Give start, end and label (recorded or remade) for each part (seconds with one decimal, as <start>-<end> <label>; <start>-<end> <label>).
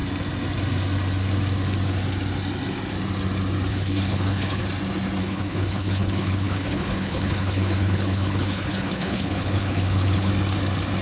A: 0.0-3.7 recorded; 3.7-4.6 remade; 4.6-5.2 recorded; 5.2-10.3 remade; 10.3-11.0 recorded